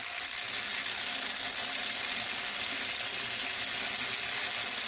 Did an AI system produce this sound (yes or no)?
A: no